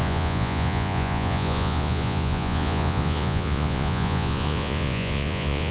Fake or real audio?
fake